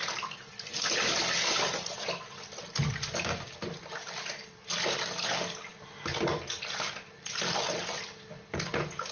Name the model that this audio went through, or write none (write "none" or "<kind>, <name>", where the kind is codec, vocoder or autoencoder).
none